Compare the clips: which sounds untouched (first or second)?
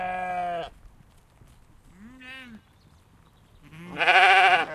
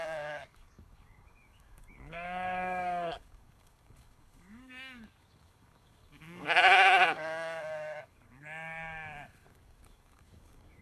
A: first